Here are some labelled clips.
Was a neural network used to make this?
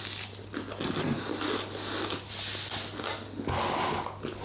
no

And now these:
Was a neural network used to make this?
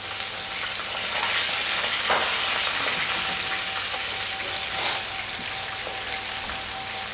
no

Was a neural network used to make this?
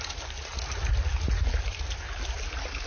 no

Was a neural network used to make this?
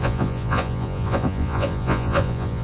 yes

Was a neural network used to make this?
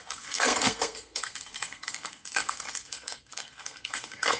yes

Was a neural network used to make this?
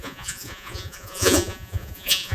yes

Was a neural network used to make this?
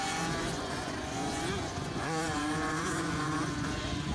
yes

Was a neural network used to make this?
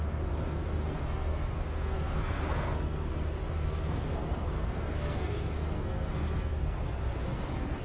yes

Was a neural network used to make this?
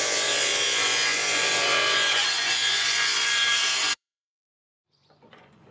yes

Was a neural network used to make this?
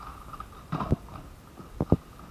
yes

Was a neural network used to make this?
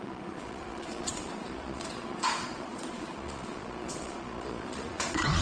yes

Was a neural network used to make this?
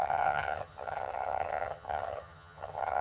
yes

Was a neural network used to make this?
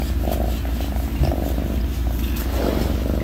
no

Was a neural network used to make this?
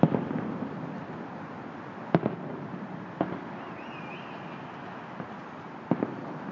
no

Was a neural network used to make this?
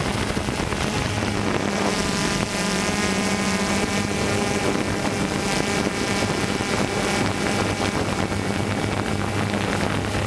no